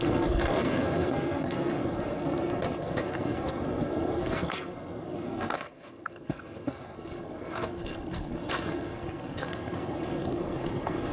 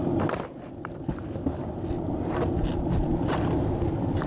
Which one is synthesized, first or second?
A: first